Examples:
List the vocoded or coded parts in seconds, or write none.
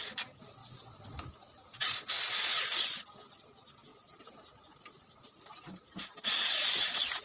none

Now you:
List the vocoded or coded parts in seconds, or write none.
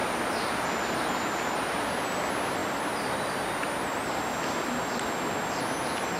none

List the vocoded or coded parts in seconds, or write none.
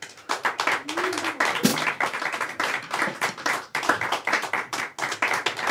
1.7-4.8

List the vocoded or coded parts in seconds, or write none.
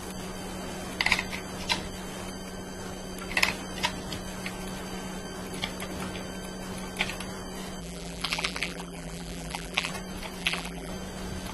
7.8-9.9; 10.4-10.9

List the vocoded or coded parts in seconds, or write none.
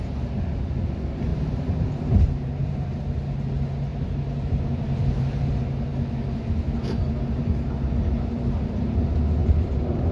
1.3-3.0; 3.9-5.5; 9.4-10.1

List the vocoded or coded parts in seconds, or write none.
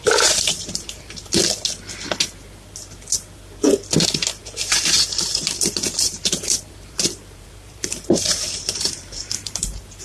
0.0-1.4; 4.0-10.0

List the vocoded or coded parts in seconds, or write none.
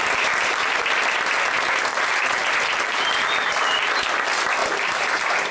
1.9-3.0; 4.6-5.5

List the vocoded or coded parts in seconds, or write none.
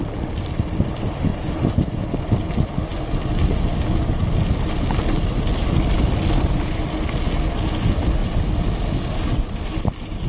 1.3-2.0